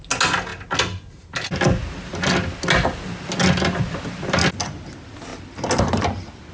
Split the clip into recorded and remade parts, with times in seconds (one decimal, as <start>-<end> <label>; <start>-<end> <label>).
0.0-6.5 recorded